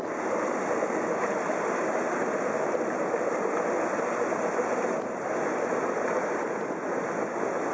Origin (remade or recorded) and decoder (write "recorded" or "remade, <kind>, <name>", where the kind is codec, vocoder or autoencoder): recorded